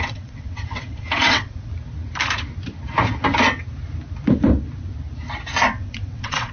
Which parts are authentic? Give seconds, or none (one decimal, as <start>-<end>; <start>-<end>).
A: 1.7-5.6